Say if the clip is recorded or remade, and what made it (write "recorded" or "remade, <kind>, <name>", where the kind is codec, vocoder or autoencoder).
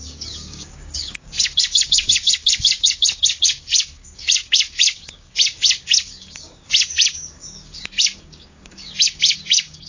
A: remade, codec, DAC